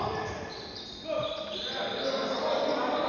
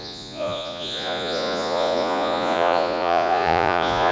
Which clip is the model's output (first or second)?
second